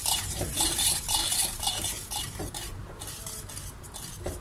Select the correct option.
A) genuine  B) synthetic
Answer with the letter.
B